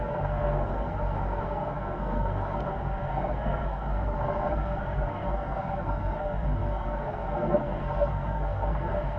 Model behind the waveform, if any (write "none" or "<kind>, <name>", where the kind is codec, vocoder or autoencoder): codec, SNAC